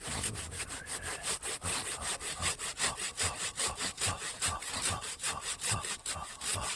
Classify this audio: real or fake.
real